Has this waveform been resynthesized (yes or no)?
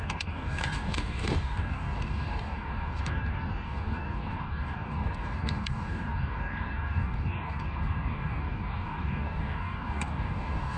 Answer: yes